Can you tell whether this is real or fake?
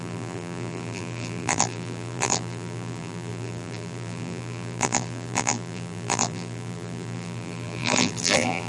fake